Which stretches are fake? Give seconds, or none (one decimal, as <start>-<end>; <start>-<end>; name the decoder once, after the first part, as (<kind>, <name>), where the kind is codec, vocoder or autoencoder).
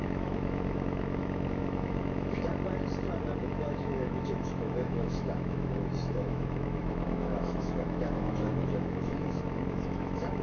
0.0-2.5 (autoencoder, DAC-VAE); 3.4-10.4